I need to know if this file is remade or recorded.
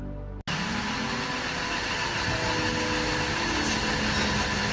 recorded